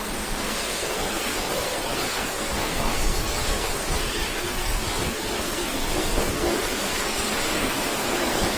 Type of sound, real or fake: fake